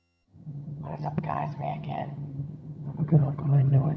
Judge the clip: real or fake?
fake